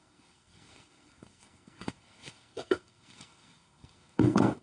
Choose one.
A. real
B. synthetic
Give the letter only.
B